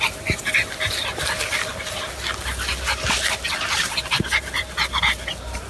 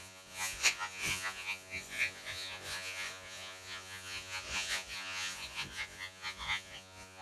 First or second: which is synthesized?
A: second